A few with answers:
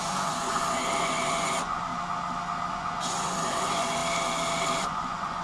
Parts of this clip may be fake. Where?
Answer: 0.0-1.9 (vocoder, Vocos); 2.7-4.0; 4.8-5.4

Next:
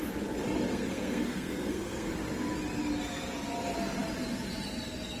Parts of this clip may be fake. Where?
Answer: 0.7-2.1 (codec, SNAC)

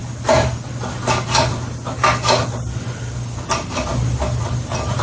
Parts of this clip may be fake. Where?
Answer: none